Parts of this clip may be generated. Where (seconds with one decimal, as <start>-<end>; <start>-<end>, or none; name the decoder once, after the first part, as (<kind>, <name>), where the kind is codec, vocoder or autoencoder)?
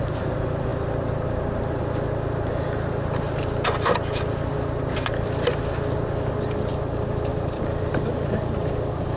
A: 7.3-7.9 (vocoder, BigVGAN v2)